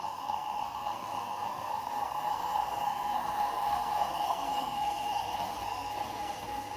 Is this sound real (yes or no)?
no